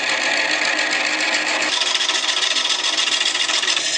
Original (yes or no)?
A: yes